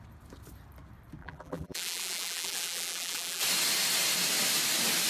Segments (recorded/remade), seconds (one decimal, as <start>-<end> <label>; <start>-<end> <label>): 0.0-1.2 recorded; 1.2-3.4 remade; 3.4-5.1 recorded